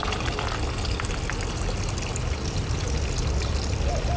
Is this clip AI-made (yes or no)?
no